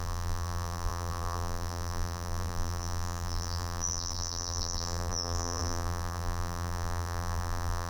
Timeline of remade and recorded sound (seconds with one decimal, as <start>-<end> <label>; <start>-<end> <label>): 0.0-7.9 remade

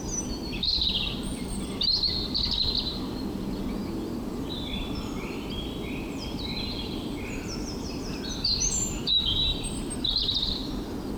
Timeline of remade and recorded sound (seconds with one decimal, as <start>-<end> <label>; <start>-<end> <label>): 0.0-10.6 remade; 10.6-11.2 recorded